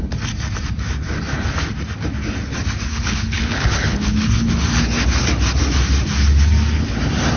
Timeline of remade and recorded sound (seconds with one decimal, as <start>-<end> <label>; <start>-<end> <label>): 0.0-2.9 recorded; 2.9-4.5 remade; 4.5-7.4 recorded

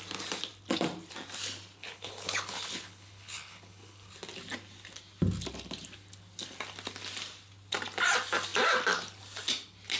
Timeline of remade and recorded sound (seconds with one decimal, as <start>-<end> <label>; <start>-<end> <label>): 0.0-1.8 recorded; 1.8-4.1 remade; 4.1-10.0 recorded